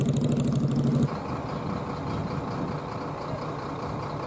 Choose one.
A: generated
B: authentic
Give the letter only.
B